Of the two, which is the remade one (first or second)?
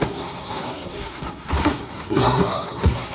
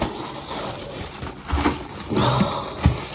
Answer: first